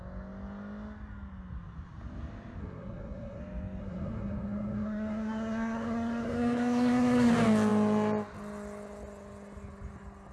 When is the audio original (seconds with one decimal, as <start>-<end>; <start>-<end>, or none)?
0.0-2.6; 3.4-3.8; 7.3-10.3